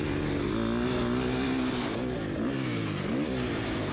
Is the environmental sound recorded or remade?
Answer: recorded